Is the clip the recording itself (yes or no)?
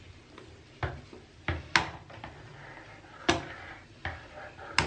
yes